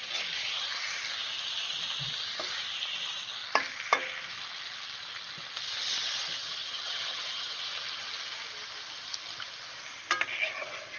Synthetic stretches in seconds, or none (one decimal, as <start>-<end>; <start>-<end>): 6.4-7.6